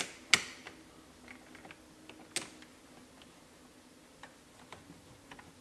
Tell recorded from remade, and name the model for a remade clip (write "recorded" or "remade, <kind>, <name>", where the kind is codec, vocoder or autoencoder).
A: recorded